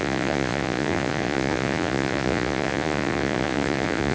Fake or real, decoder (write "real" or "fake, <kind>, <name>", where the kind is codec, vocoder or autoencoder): fake, vocoder, Vocos